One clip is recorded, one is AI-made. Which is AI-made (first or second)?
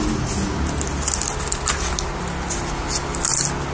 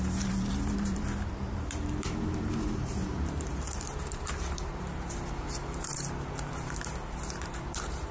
second